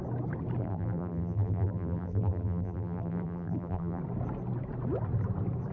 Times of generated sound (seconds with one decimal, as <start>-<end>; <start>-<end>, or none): 0.6-4.0